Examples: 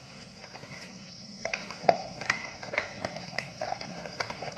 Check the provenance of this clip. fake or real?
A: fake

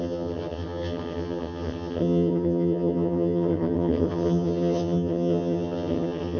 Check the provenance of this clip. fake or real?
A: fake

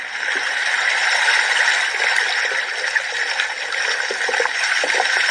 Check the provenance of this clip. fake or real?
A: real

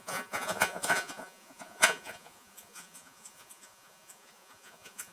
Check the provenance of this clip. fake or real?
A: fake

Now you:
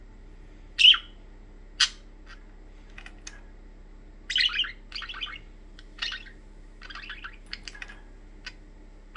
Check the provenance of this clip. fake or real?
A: real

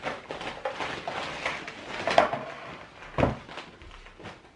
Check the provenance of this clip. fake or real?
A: real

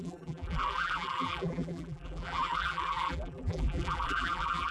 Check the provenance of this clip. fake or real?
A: fake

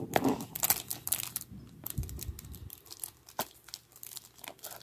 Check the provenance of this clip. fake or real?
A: real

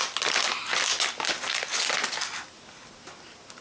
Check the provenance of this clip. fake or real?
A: real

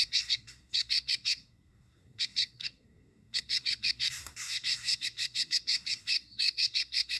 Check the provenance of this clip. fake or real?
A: fake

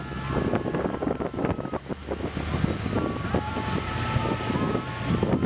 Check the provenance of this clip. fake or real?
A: real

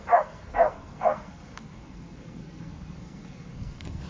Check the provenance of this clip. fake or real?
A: fake